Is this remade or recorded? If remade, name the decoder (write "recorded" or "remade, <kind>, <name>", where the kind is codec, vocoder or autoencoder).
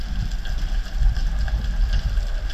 recorded